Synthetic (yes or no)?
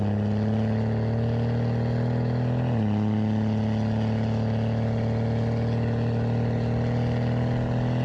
no